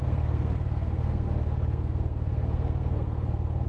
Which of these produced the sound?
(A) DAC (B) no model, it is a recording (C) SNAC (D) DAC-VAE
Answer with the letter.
C